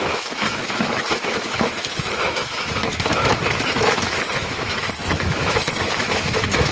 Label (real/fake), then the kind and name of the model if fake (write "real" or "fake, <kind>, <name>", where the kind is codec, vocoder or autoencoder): fake, autoencoder, DAC-VAE